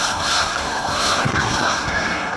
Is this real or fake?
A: fake